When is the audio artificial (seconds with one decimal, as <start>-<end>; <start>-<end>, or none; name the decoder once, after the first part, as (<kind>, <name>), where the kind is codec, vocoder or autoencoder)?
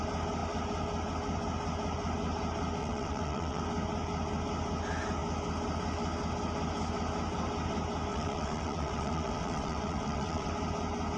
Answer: 2.8-3.6 (vocoder, WaveNeXt); 8.1-10.5